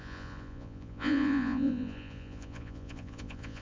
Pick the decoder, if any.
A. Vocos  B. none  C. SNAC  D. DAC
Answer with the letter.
A